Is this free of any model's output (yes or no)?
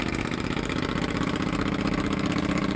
no